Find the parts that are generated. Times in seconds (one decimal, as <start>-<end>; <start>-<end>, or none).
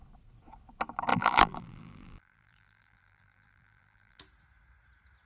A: 1.1-4.2